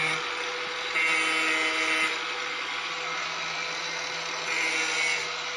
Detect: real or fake real